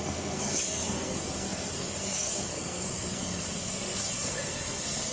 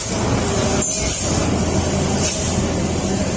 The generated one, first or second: first